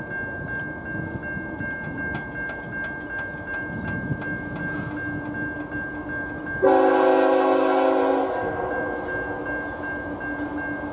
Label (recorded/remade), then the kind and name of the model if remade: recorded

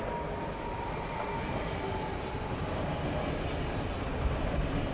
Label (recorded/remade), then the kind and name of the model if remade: recorded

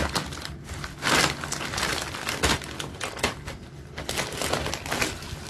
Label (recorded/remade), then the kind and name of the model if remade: recorded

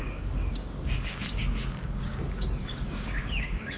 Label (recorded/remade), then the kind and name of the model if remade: remade, codec, DAC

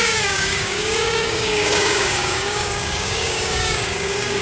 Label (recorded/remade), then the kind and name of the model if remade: remade, codec, DAC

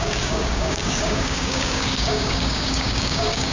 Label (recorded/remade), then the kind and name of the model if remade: remade, codec, DAC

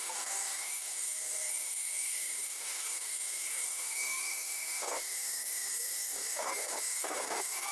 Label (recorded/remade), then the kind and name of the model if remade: remade, codec, DAC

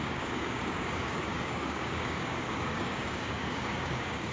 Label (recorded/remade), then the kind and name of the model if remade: remade, codec, DAC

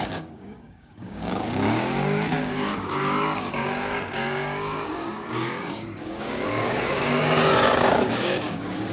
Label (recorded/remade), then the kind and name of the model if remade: remade, codec, DAC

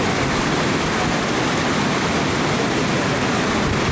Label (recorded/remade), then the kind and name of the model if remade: recorded